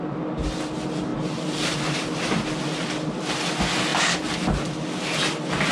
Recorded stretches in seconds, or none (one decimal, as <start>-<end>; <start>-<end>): 0.0-5.7